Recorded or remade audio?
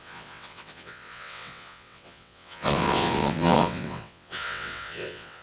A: remade